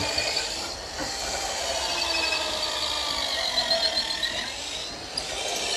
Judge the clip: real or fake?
real